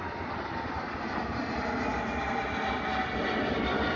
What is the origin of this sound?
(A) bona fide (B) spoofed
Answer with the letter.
A